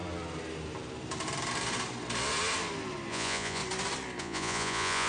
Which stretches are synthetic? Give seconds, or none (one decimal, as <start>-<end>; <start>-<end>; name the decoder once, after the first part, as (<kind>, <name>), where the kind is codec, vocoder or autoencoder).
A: 3.1-3.6 (vocoder, Vocos); 4.2-5.1